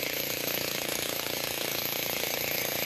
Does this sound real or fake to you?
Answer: fake